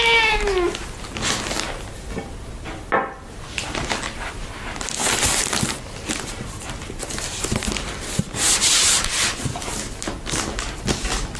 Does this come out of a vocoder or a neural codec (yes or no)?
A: no